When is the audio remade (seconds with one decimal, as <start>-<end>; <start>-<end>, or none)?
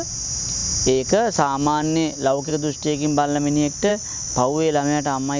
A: none